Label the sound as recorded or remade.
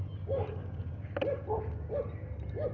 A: recorded